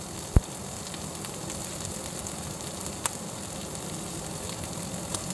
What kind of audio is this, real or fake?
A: real